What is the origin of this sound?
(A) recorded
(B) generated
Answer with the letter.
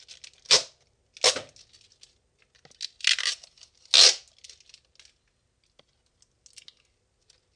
A